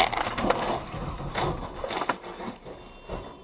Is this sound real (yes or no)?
yes